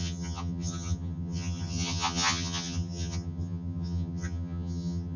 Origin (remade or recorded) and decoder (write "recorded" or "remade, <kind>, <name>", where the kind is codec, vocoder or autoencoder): remade, vocoder, HiFi-GAN